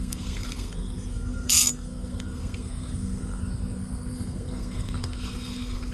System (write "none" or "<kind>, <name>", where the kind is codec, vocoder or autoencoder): codec, SNAC